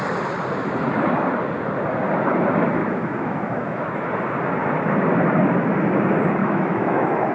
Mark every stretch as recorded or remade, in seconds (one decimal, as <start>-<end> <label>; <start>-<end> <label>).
0.0-2.8 recorded; 2.8-4.1 remade; 4.1-6.4 recorded; 6.4-7.3 remade